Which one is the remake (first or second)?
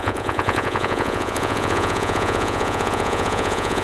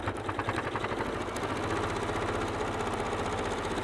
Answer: first